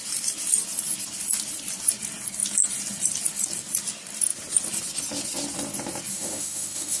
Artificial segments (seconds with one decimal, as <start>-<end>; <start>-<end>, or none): 6.1-7.0